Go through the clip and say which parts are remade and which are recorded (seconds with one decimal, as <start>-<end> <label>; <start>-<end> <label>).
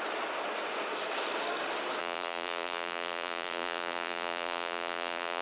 0.0-2.0 recorded; 2.0-5.4 remade